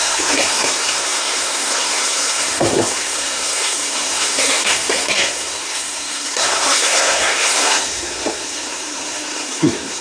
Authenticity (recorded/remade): remade